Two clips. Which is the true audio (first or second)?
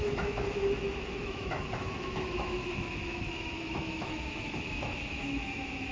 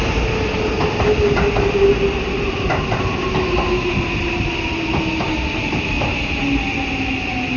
second